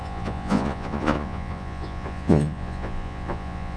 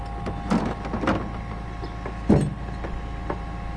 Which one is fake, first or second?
first